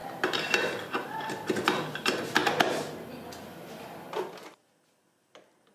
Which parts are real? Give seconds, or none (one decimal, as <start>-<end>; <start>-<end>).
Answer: 0.0-5.7